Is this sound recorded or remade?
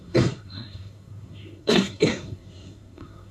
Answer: remade